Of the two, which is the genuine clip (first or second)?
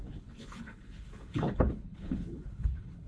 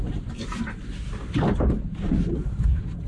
second